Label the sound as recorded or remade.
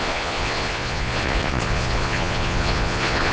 remade